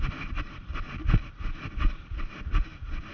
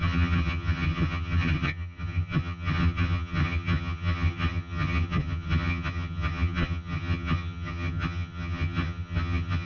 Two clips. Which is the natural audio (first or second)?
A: first